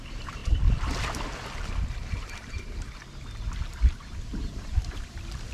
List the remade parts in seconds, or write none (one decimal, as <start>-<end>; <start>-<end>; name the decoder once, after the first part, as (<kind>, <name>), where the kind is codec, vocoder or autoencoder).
0.0-0.4 (vocoder, BigVGAN v2); 2.3-3.0; 3.7-5.5